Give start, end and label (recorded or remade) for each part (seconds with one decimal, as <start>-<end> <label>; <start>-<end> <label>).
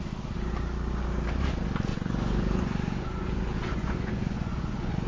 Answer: 0.0-1.9 recorded; 1.9-5.1 remade